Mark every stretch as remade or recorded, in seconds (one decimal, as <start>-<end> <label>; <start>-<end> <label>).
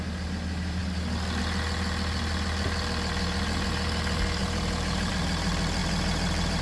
0.0-4.4 recorded; 4.4-5.1 remade; 5.1-5.8 recorded; 5.8-6.6 remade